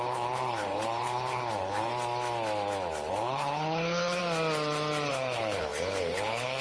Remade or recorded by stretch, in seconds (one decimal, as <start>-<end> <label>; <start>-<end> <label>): 0.0-1.9 remade; 1.9-3.1 recorded; 3.1-4.2 remade; 4.2-5.1 recorded; 5.1-6.6 remade

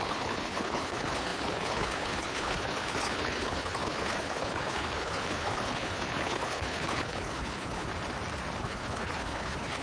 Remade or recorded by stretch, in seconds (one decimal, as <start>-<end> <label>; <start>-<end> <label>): 0.0-7.9 remade; 7.9-8.6 recorded; 8.6-9.8 remade

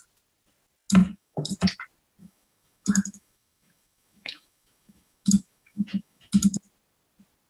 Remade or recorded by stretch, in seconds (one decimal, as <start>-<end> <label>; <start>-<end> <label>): 0.0-1.0 recorded; 1.0-1.5 remade; 1.5-2.2 recorded; 2.2-6.3 remade; 6.3-7.5 recorded

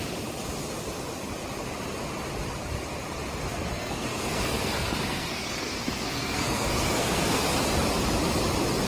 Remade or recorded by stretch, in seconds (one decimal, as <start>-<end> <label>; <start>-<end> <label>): 0.0-3.5 recorded; 3.5-7.4 remade; 7.4-8.9 recorded

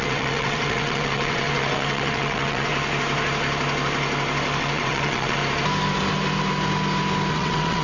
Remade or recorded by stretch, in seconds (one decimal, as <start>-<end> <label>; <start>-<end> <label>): 0.0-2.7 remade; 2.7-4.6 recorded; 4.6-5.4 remade; 5.4-7.3 recorded; 7.3-7.8 remade

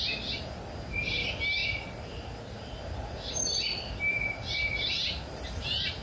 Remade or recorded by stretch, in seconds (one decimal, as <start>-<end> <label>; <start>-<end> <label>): 0.0-1.6 recorded; 1.6-2.8 remade; 2.8-6.0 recorded